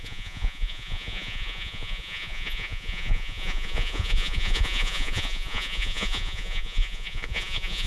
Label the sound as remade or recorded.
remade